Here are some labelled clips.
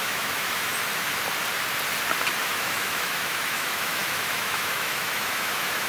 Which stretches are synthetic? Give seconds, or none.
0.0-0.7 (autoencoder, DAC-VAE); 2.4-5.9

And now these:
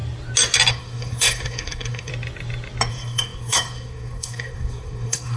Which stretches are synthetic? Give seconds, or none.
0.7-2.1 (codec, SNAC); 2.9-5.4

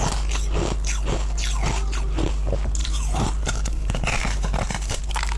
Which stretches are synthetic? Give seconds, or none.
2.8-5.0 (vocoder, BigVGAN v2)

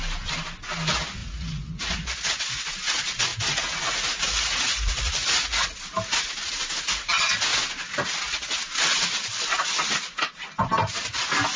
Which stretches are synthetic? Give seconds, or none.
1.2-2.7 (vocoder, Vocos); 3.3-5.7

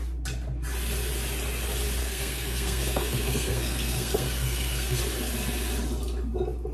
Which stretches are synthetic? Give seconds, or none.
2.0-5.0 (codec, SNAC)

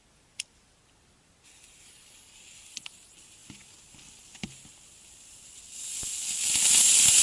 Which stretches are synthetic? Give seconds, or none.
none